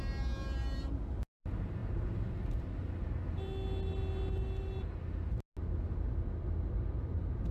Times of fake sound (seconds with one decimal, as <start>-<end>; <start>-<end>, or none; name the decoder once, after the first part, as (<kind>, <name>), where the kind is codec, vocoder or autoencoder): none